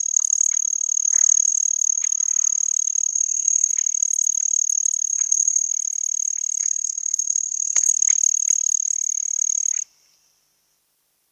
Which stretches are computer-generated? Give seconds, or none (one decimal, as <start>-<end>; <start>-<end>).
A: 3.1-3.7; 5.1-5.7; 6.6-7.9